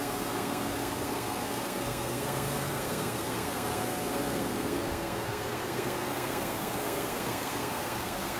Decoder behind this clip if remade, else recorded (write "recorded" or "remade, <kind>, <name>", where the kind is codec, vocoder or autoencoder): remade, codec, SNAC